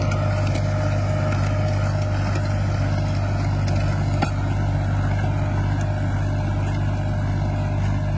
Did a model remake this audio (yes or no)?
no